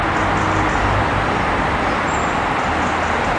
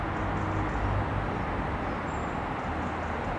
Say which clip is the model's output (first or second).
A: first